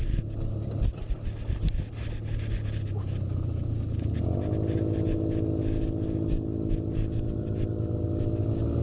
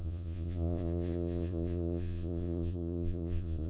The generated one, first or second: second